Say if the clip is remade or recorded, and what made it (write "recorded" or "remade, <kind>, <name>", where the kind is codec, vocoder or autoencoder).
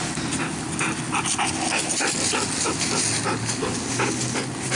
recorded